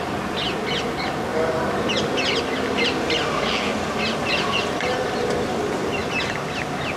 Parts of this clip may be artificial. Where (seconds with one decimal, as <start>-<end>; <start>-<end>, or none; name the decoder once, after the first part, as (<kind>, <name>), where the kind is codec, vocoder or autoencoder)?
6.0-6.5 (vocoder, BigVGAN v2)